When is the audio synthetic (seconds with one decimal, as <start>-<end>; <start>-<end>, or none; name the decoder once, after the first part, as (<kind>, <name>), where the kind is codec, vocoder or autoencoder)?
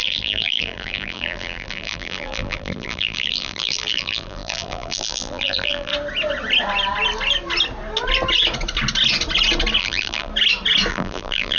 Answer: 0.0-5.9 (vocoder, BigVGAN v2); 9.8-10.3; 10.9-11.6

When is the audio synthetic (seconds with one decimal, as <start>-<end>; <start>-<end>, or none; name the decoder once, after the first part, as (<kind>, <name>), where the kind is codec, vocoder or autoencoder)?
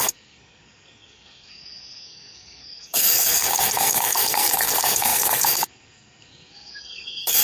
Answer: 0.0-7.4 (codec, SNAC)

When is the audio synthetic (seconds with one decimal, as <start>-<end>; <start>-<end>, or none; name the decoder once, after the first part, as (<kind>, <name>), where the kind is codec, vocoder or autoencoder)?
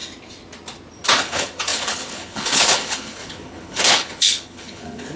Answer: 1.2-5.2 (codec, HILCodec)